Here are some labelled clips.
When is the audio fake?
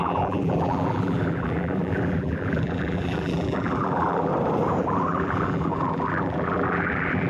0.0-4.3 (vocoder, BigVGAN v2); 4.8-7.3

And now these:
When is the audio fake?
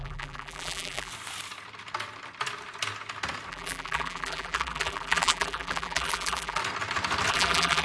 0.0-1.1 (vocoder, BigVGAN v2); 3.5-6.6; 7.3-7.8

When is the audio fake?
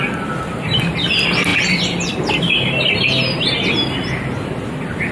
1.5-2.2 (vocoder, BigVGAN v2)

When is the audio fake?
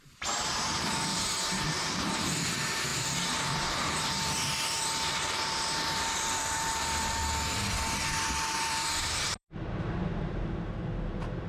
0.0-7.2 (vocoder, BigVGAN v2); 8.4-11.5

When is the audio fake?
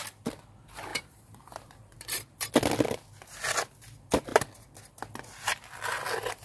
0.9-2.5 (vocoder, BigVGAN v2)